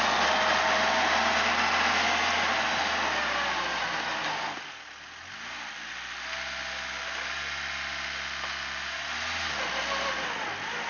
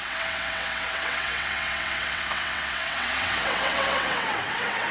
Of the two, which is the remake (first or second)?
second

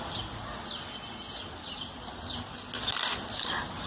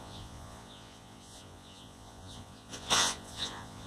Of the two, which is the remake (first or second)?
second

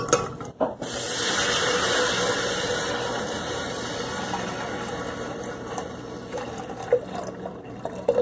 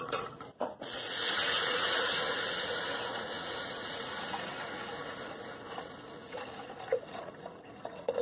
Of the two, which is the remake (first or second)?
second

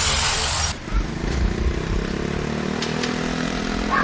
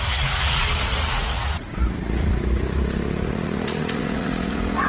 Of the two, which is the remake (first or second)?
second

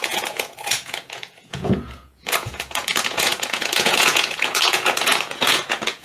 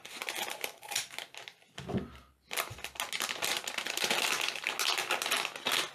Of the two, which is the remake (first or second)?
first